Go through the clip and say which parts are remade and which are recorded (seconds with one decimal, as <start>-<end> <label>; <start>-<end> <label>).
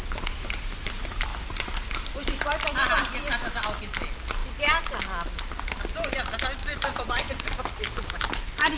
0.0-1.3 recorded; 1.3-3.8 remade; 3.8-6.6 recorded; 6.6-7.3 remade; 7.3-8.8 recorded